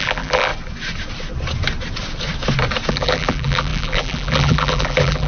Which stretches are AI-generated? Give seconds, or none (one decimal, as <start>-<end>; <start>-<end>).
0.0-0.5; 2.9-5.3